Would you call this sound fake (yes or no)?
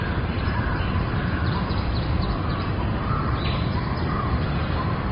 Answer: no